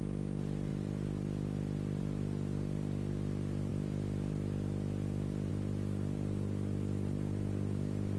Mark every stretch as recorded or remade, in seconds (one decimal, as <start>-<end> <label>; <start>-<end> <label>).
0.0-0.7 recorded; 0.7-2.0 remade; 2.0-8.2 recorded